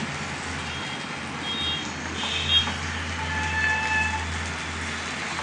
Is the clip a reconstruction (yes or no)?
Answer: no